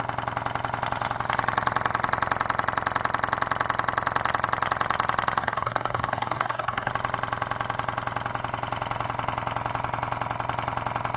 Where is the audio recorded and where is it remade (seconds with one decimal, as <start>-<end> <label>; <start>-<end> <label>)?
0.0-5.4 recorded; 5.4-6.9 remade; 6.9-11.2 recorded